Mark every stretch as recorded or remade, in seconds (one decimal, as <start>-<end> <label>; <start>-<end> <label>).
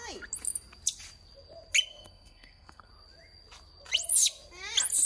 0.0-1.9 recorded; 1.9-2.9 remade; 2.9-5.1 recorded